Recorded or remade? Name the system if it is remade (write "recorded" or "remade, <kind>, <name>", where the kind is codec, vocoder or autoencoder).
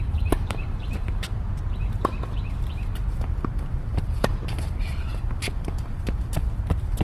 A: remade, vocoder, BigVGAN v2